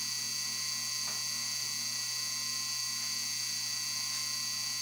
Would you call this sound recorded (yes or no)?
yes